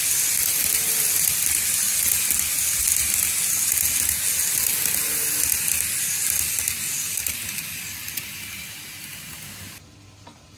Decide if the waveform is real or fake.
real